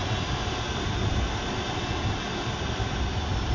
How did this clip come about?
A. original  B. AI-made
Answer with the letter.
A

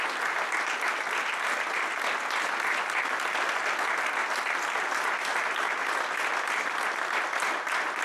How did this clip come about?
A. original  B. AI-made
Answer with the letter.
A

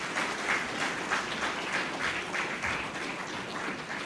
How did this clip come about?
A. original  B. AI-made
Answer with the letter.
A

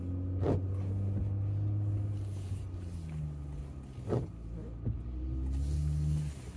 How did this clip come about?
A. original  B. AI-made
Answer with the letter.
A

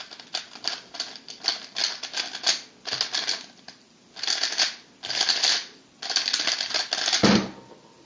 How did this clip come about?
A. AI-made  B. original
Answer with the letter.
B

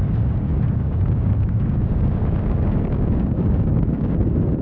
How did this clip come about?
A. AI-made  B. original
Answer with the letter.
A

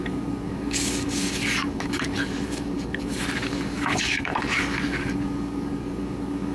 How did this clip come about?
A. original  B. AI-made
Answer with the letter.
B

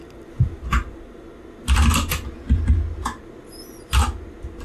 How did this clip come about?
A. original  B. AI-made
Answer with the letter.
A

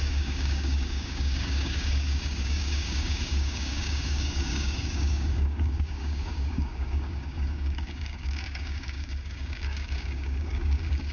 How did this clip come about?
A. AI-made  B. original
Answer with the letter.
A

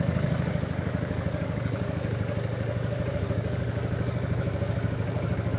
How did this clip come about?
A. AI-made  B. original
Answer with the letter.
A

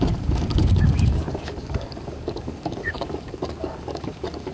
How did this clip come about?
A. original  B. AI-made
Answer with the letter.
B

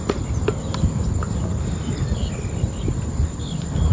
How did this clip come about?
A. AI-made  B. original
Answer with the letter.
B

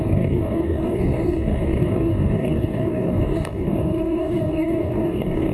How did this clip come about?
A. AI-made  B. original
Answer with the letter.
A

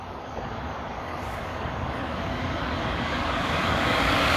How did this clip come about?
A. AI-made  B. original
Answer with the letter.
A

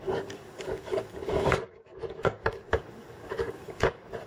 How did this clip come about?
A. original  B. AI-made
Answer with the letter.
B